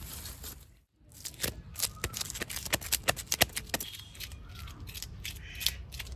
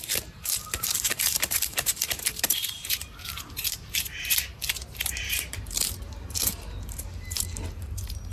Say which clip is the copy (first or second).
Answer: second